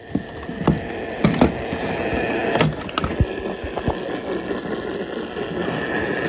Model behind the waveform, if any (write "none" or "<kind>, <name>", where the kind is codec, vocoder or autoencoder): none